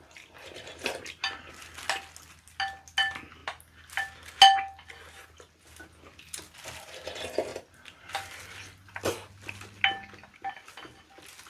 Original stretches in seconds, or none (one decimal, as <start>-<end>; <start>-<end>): 0.0-11.5